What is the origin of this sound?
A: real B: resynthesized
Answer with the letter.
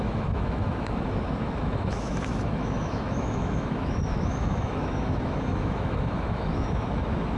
B